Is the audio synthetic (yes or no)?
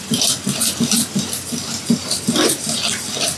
no